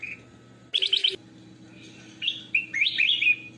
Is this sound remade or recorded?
recorded